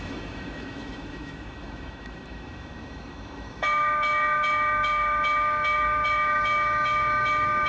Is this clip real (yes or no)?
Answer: no